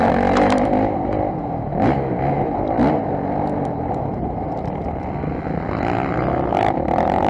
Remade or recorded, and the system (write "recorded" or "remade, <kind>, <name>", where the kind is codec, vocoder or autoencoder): recorded